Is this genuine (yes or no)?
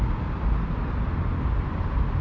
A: yes